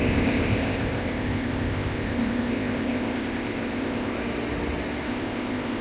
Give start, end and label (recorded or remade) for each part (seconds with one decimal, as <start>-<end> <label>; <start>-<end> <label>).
0.0-4.2 remade; 4.2-5.1 recorded; 5.1-5.8 remade